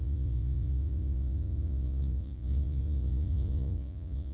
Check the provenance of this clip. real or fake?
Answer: fake